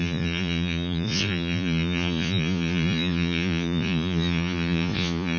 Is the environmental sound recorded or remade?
remade